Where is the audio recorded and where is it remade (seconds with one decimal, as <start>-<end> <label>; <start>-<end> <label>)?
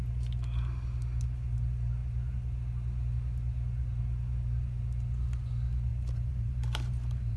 0.0-5.9 recorded; 5.9-7.4 remade